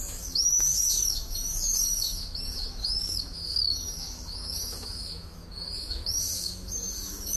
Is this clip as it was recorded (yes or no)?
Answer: no